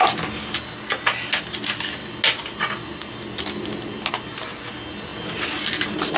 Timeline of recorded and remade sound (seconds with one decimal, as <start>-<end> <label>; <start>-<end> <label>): 0.0-6.2 recorded